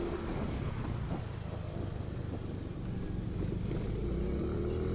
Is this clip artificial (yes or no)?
no